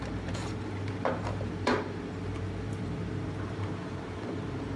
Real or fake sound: fake